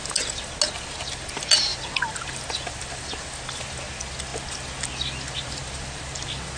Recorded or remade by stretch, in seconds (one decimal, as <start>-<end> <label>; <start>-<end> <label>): 0.0-6.6 recorded